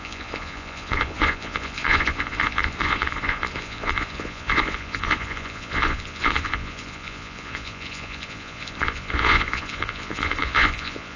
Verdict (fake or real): fake